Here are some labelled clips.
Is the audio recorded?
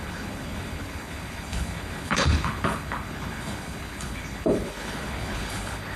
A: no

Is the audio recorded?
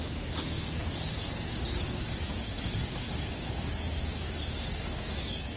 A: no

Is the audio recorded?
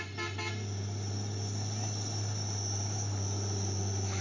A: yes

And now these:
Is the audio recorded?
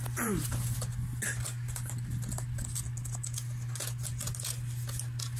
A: yes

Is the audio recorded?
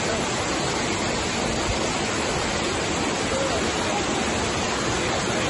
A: yes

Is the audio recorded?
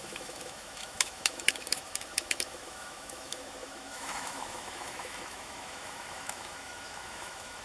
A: no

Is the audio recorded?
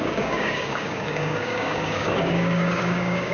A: no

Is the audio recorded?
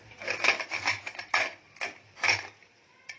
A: no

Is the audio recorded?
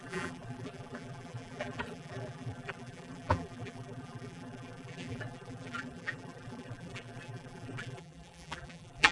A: no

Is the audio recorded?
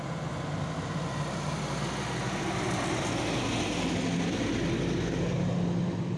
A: yes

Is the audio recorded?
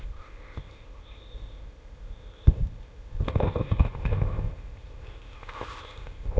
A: no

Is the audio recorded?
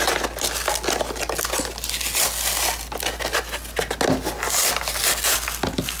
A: yes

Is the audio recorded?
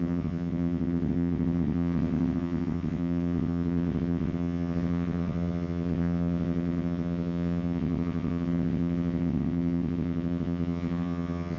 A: no